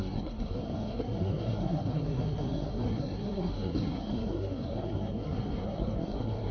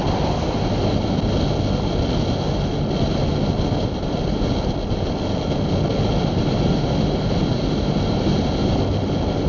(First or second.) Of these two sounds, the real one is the second